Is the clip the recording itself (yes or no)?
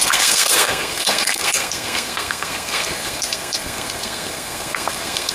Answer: no